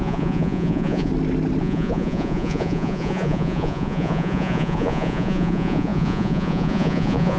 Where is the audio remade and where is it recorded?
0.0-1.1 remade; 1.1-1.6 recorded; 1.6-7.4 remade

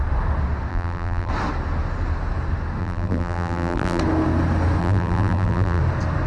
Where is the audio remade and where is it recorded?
0.0-0.7 recorded; 0.7-1.3 remade; 1.3-2.8 recorded; 2.8-4.0 remade; 4.0-4.8 recorded; 4.8-5.8 remade; 5.8-6.3 recorded

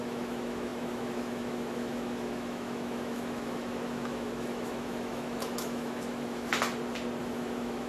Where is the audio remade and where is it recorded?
0.0-6.5 remade; 6.5-7.2 recorded; 7.2-7.9 remade